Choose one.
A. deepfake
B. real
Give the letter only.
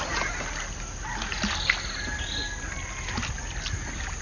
B